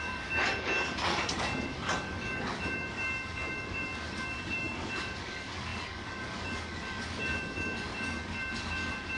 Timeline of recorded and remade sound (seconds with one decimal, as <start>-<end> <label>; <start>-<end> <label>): 0.0-9.2 remade